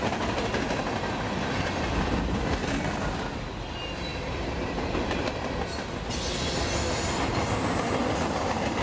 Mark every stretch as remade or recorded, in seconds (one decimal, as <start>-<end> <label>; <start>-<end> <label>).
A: 0.0-8.8 recorded